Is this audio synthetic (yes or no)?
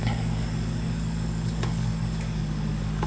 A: yes